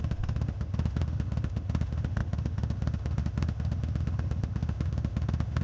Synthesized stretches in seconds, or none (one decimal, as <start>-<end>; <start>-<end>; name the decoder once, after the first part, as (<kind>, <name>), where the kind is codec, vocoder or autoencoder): 0.0-5.6 (autoencoder, DAC-VAE)